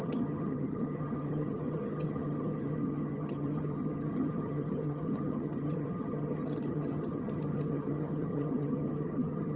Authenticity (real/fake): fake